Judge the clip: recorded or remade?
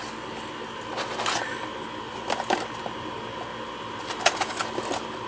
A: recorded